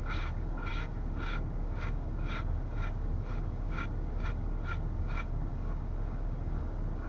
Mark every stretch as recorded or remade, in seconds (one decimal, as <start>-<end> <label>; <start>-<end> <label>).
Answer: 0.0-7.1 remade

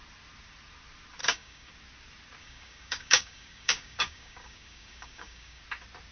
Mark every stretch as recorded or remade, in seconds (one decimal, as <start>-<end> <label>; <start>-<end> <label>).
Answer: 0.0-1.2 recorded; 1.2-1.7 remade; 1.7-2.4 recorded; 2.4-5.6 remade; 5.6-6.1 recorded